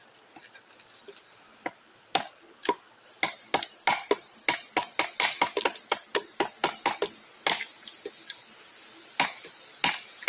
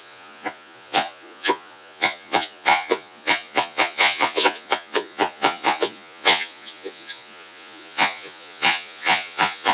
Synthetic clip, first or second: second